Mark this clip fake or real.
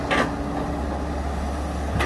real